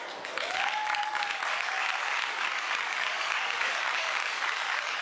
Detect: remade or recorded remade